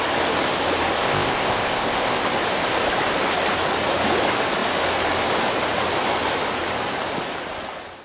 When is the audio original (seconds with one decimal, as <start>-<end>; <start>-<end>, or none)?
0.0-1.0; 2.2-8.0